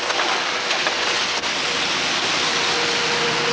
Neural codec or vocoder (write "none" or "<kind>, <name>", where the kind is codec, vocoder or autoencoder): none